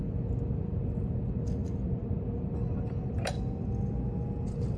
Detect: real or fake real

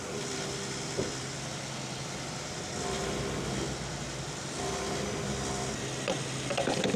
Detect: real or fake real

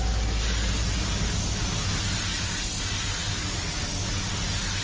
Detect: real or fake real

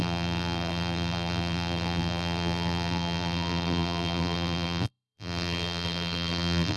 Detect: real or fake fake